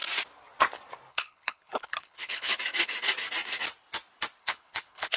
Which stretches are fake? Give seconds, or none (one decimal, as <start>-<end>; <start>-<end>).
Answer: 1.1-2.5; 4.4-5.2